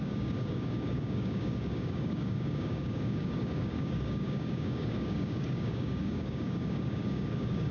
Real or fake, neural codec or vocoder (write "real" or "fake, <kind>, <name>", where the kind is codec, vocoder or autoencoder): fake, codec, DAC